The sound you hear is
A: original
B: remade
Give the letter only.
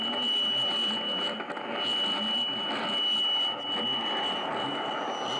A